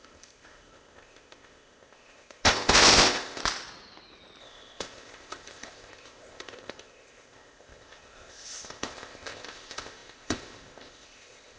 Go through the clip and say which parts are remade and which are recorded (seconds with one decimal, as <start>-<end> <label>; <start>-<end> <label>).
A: 0.0-3.4 remade; 3.4-4.4 recorded; 4.4-11.6 remade